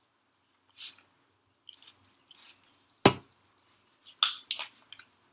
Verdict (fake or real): real